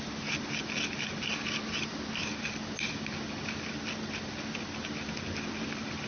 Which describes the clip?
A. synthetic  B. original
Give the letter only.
B